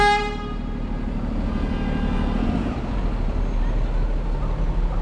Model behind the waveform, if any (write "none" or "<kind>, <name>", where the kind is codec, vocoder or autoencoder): none